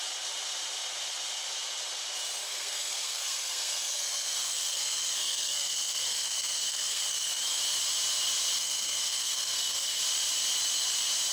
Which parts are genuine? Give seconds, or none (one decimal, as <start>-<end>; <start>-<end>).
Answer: 0.0-2.4; 7.6-8.6; 10.0-11.3